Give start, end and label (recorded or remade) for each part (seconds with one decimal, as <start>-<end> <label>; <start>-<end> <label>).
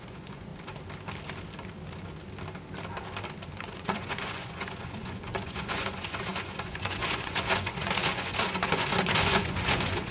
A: 0.0-0.5 remade; 0.5-3.6 recorded; 3.6-10.1 remade